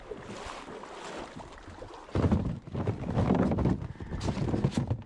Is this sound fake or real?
real